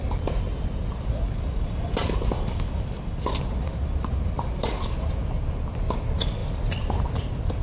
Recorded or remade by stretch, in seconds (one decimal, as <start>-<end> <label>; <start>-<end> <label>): 0.0-4.6 remade; 4.6-6.4 recorded; 6.4-7.0 remade; 7.0-7.6 recorded